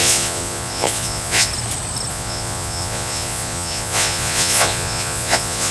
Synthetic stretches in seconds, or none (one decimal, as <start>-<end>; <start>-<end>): 0.0-1.5; 2.1-5.7